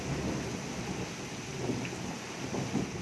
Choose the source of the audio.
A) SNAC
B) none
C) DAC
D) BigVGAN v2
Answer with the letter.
B